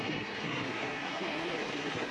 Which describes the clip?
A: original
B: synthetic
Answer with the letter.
B